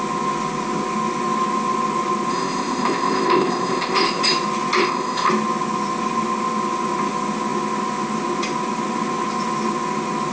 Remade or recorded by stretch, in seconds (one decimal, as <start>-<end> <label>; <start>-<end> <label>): 0.0-2.3 recorded; 2.3-4.2 remade; 4.2-4.8 recorded; 4.8-5.3 remade; 5.3-10.3 recorded